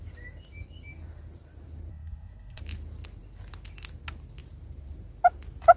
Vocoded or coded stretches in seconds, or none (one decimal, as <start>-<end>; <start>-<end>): 1.9-2.6